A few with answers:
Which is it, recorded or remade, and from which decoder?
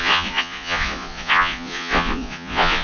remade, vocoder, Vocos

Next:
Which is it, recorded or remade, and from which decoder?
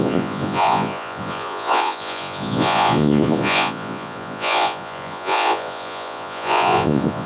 remade, vocoder, Vocos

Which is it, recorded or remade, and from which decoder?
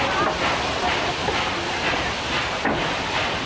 remade, vocoder, BigVGAN v2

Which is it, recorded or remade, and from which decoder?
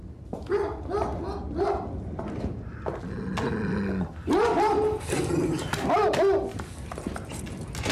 recorded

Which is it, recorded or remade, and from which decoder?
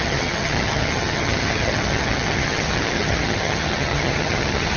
remade, vocoder, HiFi-GAN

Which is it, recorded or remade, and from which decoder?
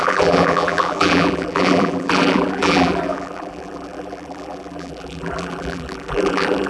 remade, vocoder, BigVGAN v2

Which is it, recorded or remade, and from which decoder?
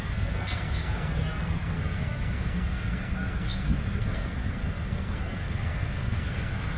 remade, codec, SNAC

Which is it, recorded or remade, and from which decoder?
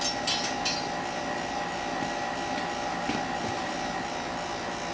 recorded